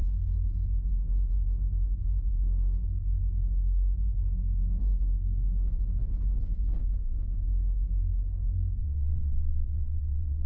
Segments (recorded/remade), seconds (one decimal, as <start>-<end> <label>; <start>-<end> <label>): 0.0-8.8 recorded; 8.8-10.5 remade